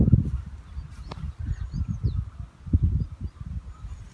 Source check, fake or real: real